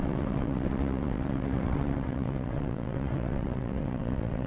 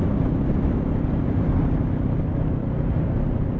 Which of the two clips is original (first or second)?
second